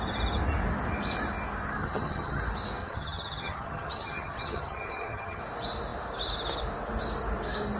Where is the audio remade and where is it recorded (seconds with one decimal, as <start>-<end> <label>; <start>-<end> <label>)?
0.0-1.8 recorded; 1.8-2.4 remade; 2.4-2.8 recorded; 2.8-5.4 remade; 5.4-7.8 recorded